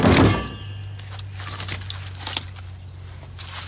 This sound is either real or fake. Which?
real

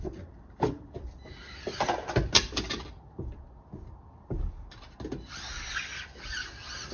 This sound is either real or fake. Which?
real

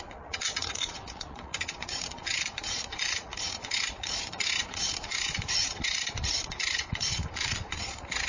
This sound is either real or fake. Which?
fake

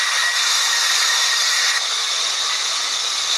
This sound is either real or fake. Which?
real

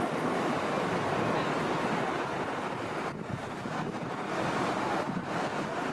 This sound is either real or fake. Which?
real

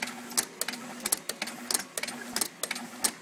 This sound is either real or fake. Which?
real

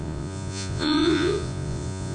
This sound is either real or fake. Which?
fake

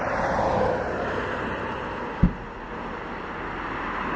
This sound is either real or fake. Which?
real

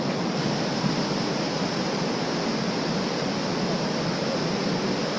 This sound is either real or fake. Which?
real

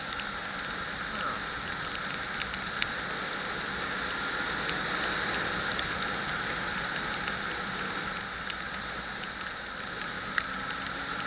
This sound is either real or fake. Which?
real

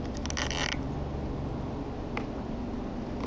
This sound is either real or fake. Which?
real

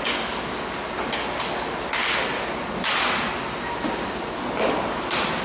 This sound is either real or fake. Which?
real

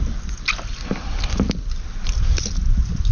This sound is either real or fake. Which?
real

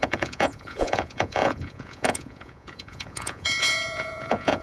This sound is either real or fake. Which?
fake